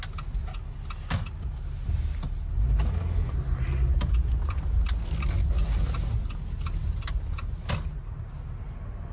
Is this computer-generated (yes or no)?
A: no